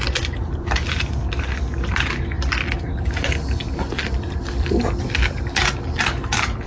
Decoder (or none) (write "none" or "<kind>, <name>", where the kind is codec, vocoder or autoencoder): none